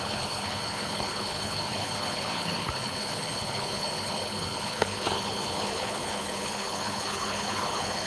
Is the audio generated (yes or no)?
yes